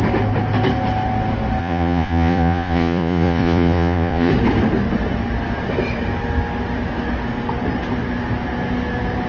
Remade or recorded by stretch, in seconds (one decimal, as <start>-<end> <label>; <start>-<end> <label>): 0.0-1.6 recorded; 1.6-4.3 remade; 4.3-9.3 recorded